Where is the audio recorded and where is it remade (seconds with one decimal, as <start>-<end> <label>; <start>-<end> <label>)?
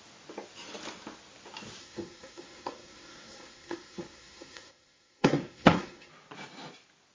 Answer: 0.0-1.8 recorded; 1.8-6.1 remade; 6.1-7.1 recorded